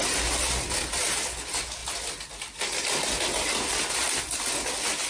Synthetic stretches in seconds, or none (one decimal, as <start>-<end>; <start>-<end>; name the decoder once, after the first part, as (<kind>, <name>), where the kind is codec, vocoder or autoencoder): none